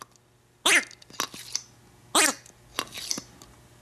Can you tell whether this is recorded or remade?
recorded